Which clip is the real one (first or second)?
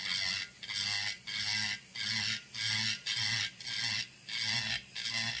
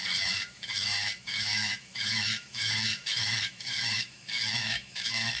first